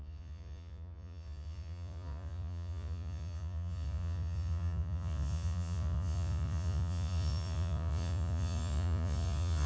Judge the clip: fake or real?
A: fake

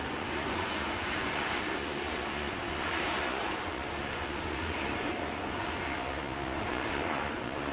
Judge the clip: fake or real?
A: fake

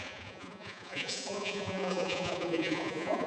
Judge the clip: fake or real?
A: fake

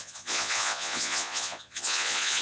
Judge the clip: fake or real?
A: fake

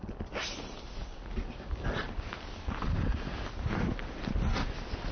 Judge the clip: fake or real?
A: real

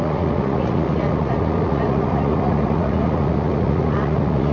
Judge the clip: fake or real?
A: fake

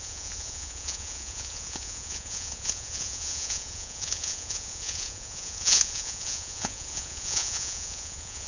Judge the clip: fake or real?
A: fake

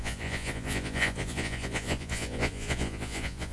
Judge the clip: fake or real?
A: fake